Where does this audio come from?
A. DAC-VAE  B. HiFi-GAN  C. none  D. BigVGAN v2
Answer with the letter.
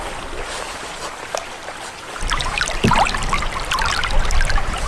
C